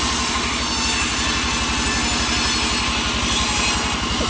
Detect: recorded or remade recorded